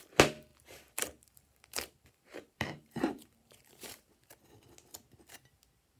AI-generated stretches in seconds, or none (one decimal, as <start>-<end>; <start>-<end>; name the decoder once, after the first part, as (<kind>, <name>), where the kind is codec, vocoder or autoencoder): 0.5-4.1 (vocoder, BigVGAN v2)